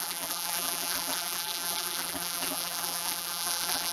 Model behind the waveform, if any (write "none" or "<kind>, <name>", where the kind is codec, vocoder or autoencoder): vocoder, BigVGAN v2